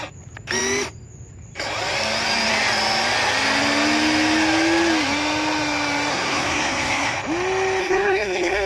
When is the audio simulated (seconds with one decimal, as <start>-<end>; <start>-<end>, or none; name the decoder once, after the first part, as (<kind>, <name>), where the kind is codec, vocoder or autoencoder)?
6.1-7.2 (codec, SNAC); 7.8-8.7